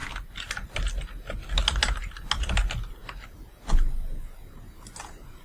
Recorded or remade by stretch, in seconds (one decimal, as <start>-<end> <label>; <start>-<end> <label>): 0.0-5.4 recorded